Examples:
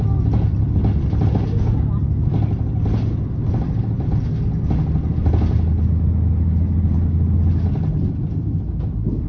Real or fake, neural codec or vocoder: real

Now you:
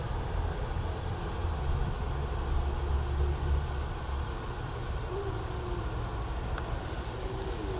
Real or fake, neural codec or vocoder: real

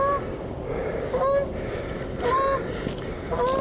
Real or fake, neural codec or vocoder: real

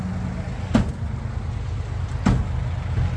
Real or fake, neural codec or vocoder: real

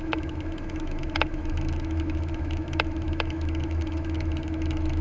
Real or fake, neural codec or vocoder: fake, autoencoder, DAC-VAE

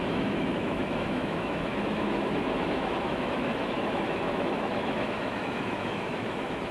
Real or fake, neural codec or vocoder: fake, autoencoder, DAC-VAE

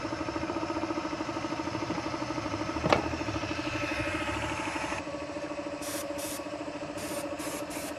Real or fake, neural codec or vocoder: fake, vocoder, BigVGAN v2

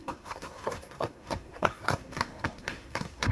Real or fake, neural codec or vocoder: fake, codec, SNAC